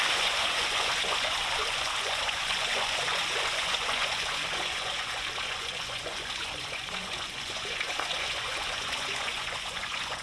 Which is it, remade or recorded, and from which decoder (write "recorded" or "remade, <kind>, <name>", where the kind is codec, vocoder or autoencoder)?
remade, vocoder, Vocos